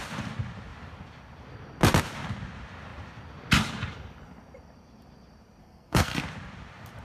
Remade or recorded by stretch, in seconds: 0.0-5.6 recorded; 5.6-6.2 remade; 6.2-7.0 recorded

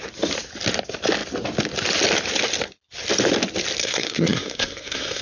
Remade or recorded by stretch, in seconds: 0.0-3.8 recorded; 3.8-5.2 remade

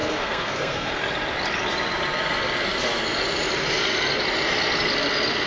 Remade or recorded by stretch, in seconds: 0.0-0.9 remade; 0.9-5.5 recorded